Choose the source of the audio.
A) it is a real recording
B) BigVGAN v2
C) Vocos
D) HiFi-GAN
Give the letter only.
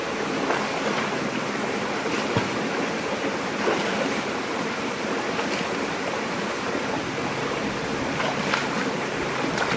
A